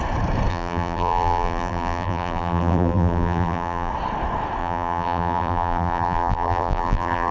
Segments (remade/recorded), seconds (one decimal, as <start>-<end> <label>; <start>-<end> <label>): 0.0-0.5 recorded; 0.5-3.9 remade; 3.9-4.6 recorded; 4.6-7.3 remade